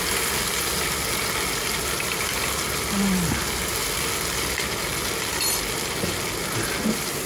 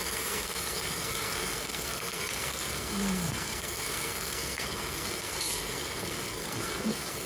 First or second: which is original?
first